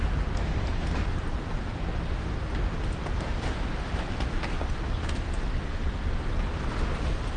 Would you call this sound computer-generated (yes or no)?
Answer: no